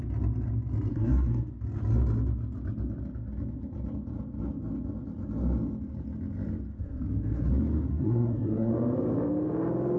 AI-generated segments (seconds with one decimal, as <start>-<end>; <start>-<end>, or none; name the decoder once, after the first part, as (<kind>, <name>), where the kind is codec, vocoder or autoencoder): 0.9-1.5 (codec, SNAC); 6.8-7.5; 7.9-8.7